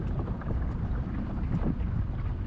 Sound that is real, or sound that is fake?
fake